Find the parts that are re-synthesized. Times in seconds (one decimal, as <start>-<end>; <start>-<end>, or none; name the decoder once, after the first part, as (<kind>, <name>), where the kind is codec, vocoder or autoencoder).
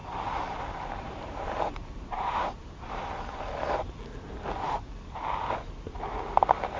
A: 0.0-3.4 (vocoder, BigVGAN v2)